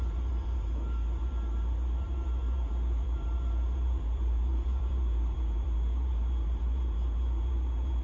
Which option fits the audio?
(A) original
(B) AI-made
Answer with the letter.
B